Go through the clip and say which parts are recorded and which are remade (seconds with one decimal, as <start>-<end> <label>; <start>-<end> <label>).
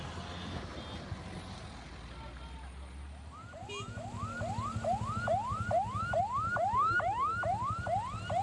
0.0-8.4 recorded